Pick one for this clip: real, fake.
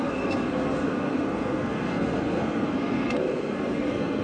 fake